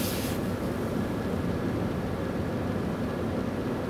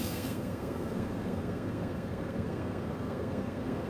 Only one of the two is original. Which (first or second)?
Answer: first